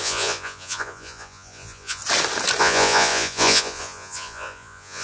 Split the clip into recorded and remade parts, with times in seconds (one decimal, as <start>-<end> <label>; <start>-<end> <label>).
0.0-2.0 remade; 2.0-2.6 recorded; 2.6-5.0 remade